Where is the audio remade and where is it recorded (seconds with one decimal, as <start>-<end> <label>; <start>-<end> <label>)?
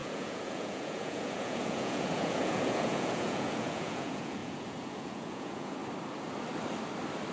0.0-5.8 remade; 5.8-7.3 recorded